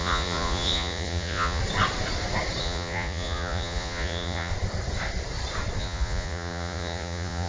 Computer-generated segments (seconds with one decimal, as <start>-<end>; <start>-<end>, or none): 0.0-1.6; 2.6-4.5; 5.8-7.5